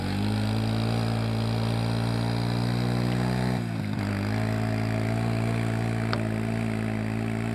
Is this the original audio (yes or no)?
yes